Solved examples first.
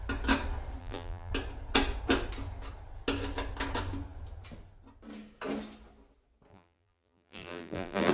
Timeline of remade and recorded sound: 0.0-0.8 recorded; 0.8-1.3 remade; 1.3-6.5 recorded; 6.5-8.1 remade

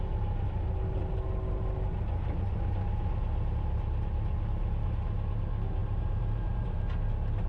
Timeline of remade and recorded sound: 0.0-5.8 recorded; 5.8-6.8 remade; 6.8-7.5 recorded

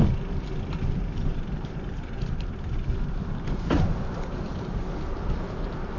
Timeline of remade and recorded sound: 0.0-1.3 recorded; 1.3-4.9 remade; 4.9-6.0 recorded

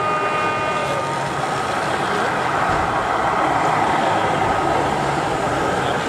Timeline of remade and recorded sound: 0.0-0.8 recorded; 0.8-3.1 remade; 3.1-6.1 recorded

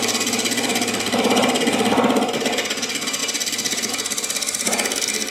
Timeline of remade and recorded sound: 0.0-5.3 recorded

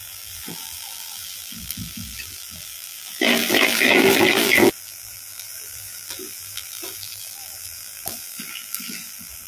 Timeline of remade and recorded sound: 0.0-9.5 remade

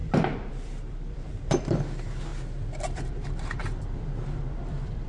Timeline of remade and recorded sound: 0.0-2.3 remade; 2.3-2.8 recorded; 2.8-5.1 remade